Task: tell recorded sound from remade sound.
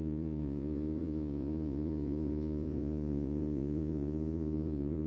remade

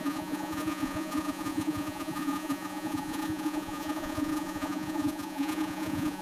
remade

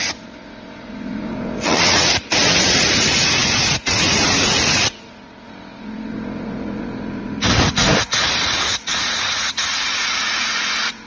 remade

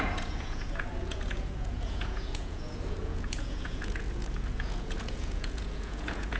remade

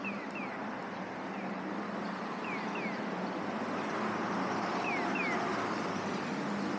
recorded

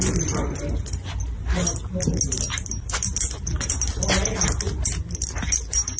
recorded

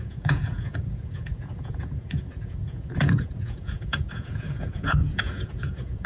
remade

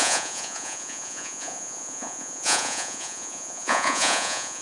remade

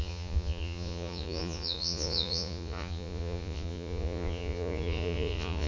remade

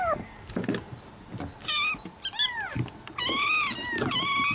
recorded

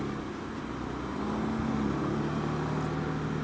recorded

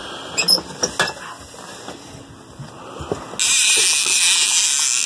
recorded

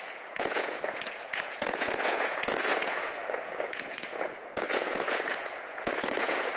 remade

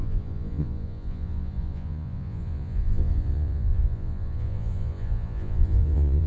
remade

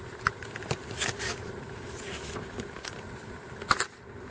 recorded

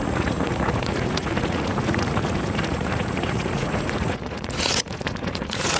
remade